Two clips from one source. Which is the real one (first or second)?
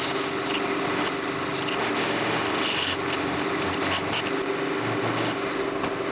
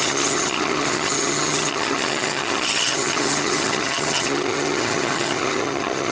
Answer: first